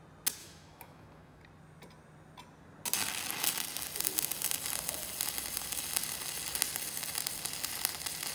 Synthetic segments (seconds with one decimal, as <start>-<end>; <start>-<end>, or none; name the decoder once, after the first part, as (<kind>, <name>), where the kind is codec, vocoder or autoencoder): 0.4-1.4 (autoencoder, DAC-VAE)